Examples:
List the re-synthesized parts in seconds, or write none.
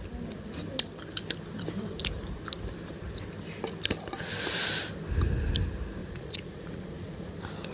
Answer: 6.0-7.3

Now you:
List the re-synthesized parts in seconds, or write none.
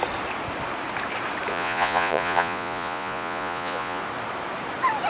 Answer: 1.5-4.0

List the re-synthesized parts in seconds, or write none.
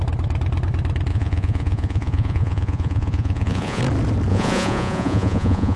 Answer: 1.1-3.8; 4.3-5.8